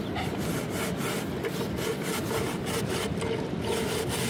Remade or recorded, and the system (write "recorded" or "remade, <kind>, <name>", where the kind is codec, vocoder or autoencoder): recorded